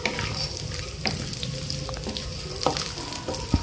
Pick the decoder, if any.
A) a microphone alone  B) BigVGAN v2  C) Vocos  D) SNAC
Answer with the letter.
A